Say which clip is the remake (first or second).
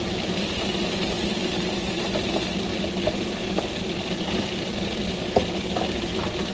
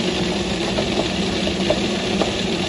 second